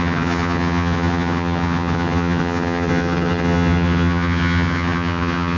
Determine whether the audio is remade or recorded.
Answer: remade